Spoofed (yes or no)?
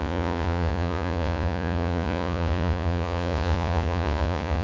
yes